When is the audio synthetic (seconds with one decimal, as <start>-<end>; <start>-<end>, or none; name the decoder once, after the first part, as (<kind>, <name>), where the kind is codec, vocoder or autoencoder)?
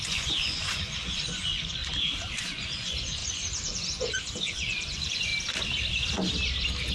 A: 0.0-1.8 (vocoder, Vocos); 2.4-5.3